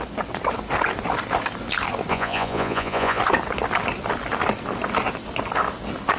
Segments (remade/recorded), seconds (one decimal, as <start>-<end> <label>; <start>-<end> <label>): 0.0-2.1 recorded; 2.1-3.2 remade; 3.2-6.2 recorded